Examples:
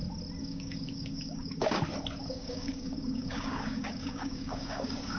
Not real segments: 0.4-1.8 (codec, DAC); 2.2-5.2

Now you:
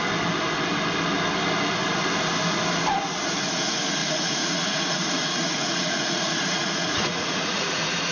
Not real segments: 4.0-8.1 (vocoder, Vocos)

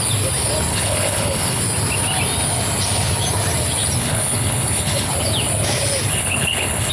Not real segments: 0.7-1.6 (codec, HILCodec); 4.0-5.1; 6.1-6.9

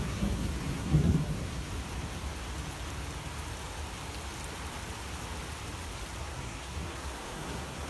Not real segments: 0.0-1.7 (codec, SNAC); 6.2-7.9

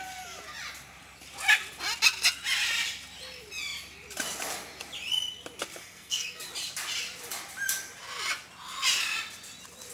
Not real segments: 5.8-6.4 (codec, SNAC)

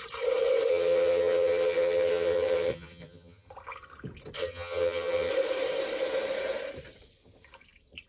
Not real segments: 0.7-3.5 (vocoder, HiFi-GAN); 4.4-5.3